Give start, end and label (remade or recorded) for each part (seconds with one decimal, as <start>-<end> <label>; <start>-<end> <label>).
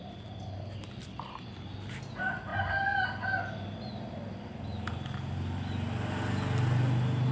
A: 0.0-7.3 recorded